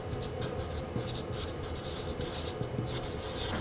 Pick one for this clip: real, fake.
real